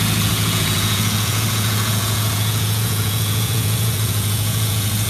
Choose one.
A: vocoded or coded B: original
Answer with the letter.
A